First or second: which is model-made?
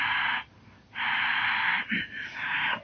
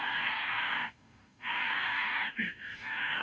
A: second